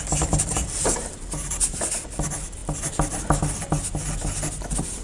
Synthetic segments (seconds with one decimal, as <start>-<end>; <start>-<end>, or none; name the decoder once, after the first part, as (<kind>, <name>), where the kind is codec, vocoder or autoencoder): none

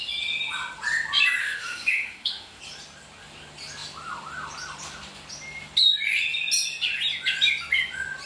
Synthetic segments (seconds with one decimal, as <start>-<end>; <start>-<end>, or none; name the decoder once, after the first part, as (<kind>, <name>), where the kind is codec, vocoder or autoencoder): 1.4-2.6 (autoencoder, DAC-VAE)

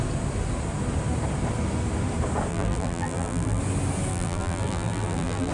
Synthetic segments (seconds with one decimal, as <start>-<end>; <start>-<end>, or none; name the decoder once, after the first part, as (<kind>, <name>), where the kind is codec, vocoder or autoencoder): 2.5-3.6 (vocoder, BigVGAN v2); 4.1-5.5

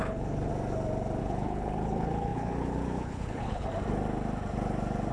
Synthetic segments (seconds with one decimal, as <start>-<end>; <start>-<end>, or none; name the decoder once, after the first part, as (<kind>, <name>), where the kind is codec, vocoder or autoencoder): 0.0-0.5 (codec, HILCodec); 1.2-3.7

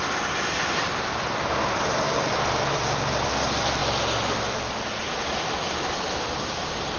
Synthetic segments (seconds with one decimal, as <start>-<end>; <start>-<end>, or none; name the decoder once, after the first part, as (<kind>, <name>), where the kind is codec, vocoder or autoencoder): none

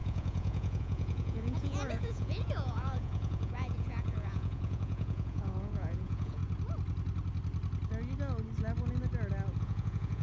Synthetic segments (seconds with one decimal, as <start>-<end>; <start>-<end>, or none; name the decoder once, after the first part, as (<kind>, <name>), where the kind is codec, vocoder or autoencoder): 0.0-6.4 (vocoder, Vocos); 9.6-10.2